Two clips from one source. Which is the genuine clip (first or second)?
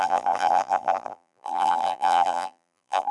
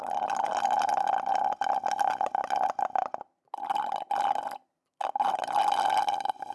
second